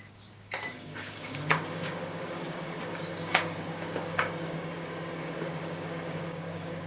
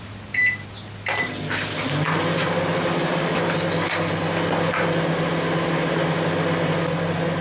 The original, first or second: second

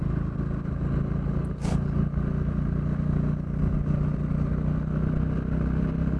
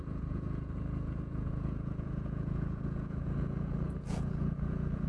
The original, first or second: first